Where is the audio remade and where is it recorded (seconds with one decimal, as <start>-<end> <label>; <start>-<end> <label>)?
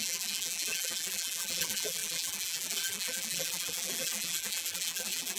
0.0-5.4 remade